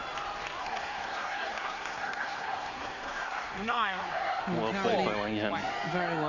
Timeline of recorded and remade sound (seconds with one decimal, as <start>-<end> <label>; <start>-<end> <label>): 0.0-0.6 recorded; 0.6-4.4 remade; 4.4-6.3 recorded